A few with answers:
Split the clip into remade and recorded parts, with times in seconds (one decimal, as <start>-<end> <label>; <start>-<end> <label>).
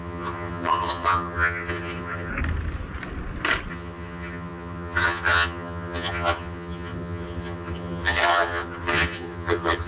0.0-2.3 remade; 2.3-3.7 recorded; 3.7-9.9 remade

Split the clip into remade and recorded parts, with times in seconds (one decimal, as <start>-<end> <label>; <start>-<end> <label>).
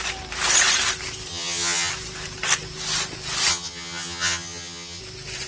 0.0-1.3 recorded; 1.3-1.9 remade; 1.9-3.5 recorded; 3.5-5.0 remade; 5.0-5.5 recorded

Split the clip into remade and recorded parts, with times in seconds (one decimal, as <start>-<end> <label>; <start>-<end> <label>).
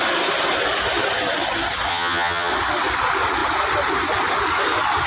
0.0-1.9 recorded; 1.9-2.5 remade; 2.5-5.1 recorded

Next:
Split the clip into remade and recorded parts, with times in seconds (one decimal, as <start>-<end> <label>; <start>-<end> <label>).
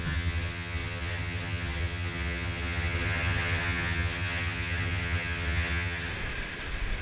0.0-6.1 remade; 6.1-7.0 recorded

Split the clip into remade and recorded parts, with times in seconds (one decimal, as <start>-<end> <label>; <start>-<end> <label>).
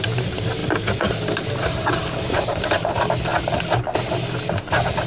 0.0-5.1 recorded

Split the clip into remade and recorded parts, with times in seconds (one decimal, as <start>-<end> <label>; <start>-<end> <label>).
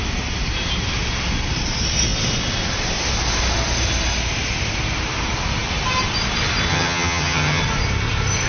0.0-6.7 recorded; 6.7-7.6 remade; 7.6-8.5 recorded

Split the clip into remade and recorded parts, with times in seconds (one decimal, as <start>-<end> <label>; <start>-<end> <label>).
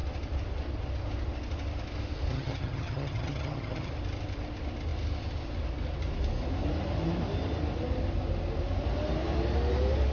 0.0-2.3 recorded; 2.3-3.9 remade; 3.9-10.1 recorded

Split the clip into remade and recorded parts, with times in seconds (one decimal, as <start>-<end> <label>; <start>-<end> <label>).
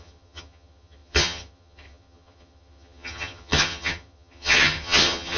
0.0-5.4 remade